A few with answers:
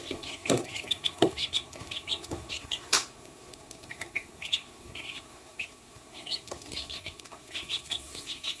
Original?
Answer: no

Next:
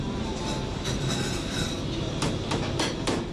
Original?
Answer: no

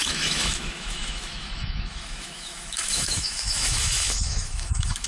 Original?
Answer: no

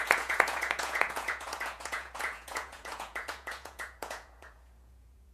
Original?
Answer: no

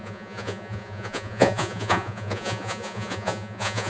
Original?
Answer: no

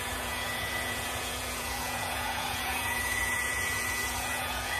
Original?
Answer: no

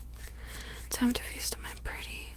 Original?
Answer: no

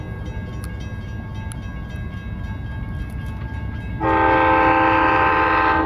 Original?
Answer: yes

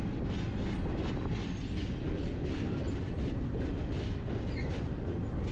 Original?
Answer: yes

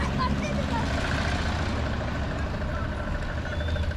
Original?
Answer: yes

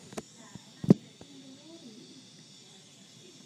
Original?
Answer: yes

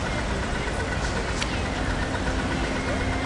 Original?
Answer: yes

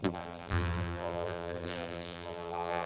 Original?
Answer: no